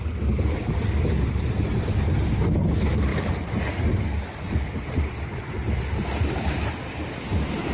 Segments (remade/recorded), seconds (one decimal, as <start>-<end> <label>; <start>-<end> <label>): 0.0-7.7 recorded